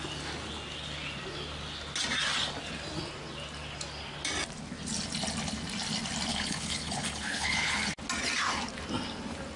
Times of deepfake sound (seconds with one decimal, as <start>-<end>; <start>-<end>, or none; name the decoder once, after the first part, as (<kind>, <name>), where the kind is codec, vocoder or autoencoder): 6.3-7.9 (codec, HILCodec)